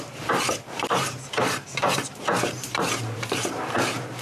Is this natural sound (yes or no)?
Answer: no